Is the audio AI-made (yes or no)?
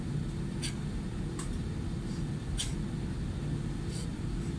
no